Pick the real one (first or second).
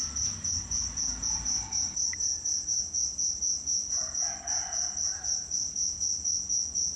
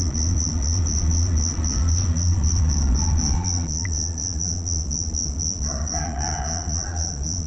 first